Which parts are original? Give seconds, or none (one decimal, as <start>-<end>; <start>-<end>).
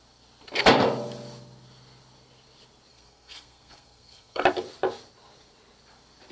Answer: 0.0-2.9; 4.4-6.3